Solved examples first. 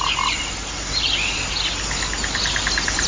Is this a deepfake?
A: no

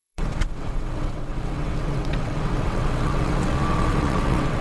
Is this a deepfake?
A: yes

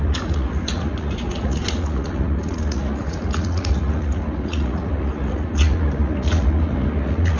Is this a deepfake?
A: yes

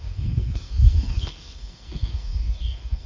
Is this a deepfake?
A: yes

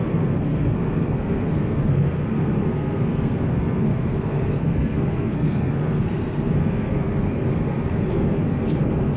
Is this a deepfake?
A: yes